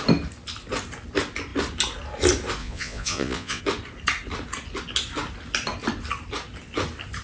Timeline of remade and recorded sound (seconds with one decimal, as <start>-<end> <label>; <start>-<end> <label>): 0.0-2.6 recorded; 2.6-3.6 remade; 3.6-7.2 recorded